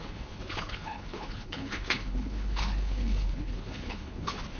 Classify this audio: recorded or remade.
remade